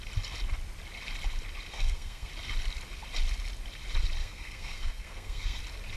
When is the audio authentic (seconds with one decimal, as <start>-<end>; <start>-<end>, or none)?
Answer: 0.0-1.7; 2.3-4.2; 5.6-6.0